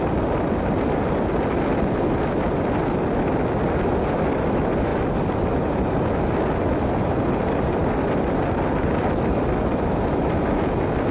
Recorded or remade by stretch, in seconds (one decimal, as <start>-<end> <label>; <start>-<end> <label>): 0.0-11.1 recorded